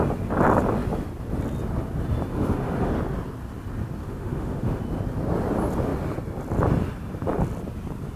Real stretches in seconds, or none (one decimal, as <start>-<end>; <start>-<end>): 0.0-2.3; 2.9-4.0; 4.8-8.2